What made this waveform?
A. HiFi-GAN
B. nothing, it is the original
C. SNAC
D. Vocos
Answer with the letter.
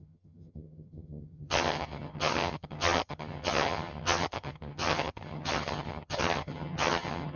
A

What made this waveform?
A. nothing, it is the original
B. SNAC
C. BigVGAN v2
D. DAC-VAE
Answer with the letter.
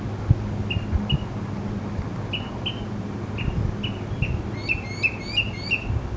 A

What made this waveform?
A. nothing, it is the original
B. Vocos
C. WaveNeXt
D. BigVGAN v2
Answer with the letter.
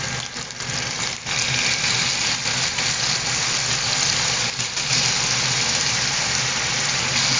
A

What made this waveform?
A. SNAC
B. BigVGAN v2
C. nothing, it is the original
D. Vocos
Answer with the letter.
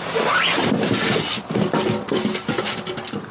C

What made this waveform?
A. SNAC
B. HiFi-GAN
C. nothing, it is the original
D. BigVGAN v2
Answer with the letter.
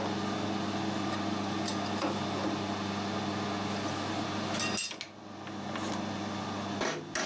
C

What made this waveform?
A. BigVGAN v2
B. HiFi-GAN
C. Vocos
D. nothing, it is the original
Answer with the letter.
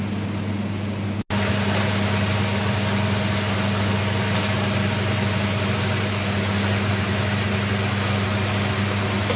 D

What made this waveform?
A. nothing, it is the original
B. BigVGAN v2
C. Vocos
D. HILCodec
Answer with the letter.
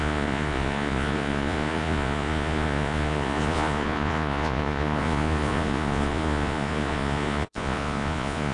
C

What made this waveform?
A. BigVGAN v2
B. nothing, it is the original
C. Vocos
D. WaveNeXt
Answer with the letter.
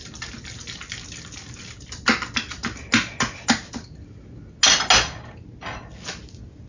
B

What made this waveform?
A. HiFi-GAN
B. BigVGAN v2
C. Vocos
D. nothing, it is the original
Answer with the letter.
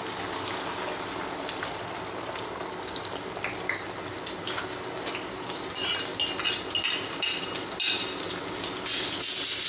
D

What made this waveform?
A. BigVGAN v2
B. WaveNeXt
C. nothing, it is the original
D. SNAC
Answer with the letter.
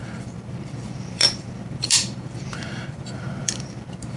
A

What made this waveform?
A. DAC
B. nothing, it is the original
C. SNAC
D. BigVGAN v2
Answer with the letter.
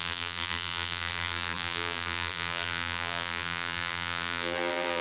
D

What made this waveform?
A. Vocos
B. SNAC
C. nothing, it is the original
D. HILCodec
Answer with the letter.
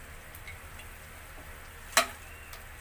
C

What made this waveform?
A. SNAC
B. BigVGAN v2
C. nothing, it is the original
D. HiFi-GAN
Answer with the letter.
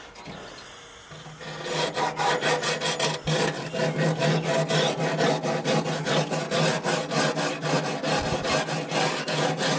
C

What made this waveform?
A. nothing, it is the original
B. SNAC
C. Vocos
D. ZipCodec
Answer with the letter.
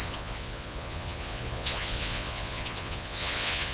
C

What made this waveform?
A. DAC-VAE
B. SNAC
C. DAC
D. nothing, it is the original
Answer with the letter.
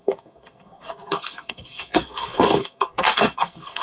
B